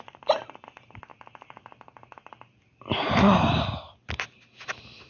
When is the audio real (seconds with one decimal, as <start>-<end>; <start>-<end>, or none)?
0.0-5.1